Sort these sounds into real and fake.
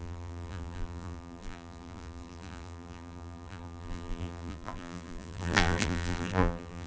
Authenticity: fake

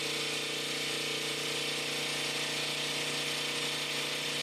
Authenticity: real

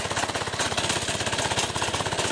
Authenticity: real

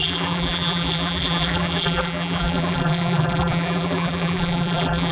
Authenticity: fake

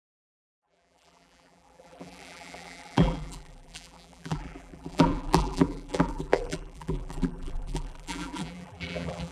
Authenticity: fake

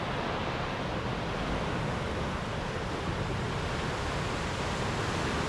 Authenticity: real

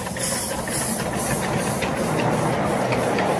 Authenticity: fake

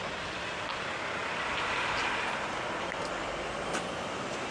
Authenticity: real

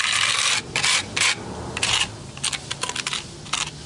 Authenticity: real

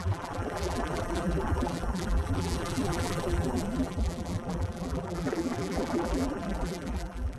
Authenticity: fake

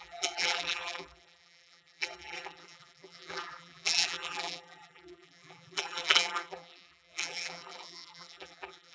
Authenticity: fake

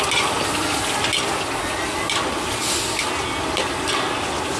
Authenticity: real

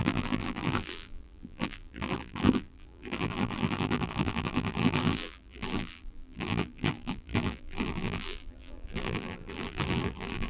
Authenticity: fake